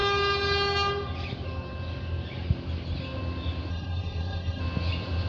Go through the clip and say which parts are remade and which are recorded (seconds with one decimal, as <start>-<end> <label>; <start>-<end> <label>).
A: 0.0-3.7 recorded; 3.7-4.6 remade; 4.6-5.3 recorded